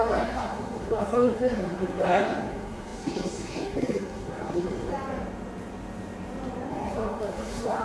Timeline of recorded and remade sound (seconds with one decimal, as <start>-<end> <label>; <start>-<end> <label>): 0.0-4.9 remade; 4.9-6.7 recorded; 6.7-7.8 remade